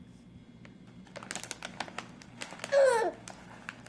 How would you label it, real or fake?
real